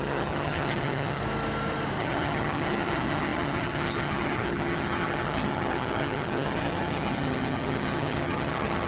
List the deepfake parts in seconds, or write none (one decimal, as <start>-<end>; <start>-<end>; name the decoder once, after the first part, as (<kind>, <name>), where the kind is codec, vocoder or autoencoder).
0.0-1.2 (vocoder, HiFi-GAN); 2.0-8.9